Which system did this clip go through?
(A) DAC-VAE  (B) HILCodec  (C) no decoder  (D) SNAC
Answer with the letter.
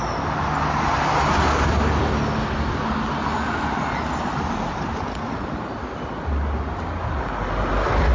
C